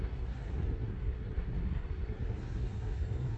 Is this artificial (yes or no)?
yes